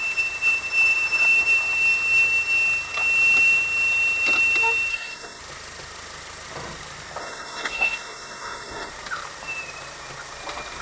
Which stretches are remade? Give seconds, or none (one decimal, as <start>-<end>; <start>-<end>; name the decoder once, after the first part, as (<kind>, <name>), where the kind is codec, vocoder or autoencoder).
4.9-5.4 (codec, SNAC); 7.2-8.9